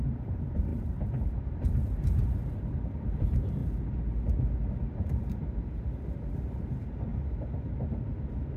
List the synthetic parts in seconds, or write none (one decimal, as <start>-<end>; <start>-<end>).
0.0-3.6; 4.9-8.6